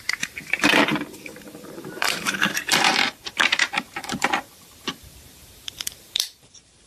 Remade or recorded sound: remade